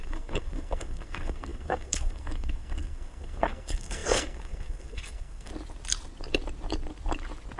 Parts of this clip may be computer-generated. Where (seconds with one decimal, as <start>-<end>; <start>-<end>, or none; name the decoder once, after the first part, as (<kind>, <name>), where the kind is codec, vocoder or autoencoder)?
0.0-5.5 (codec, SNAC)